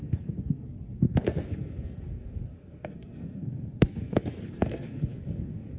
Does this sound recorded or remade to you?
remade